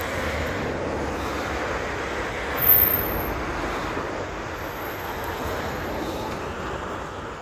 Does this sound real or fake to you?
real